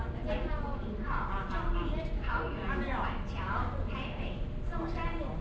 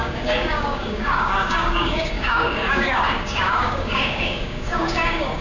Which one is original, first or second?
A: first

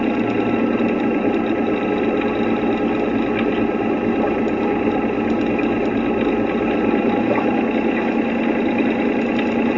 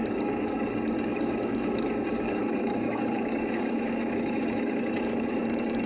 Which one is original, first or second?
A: first